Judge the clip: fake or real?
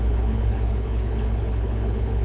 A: fake